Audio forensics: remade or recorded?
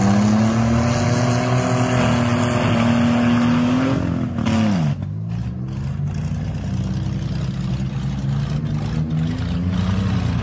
recorded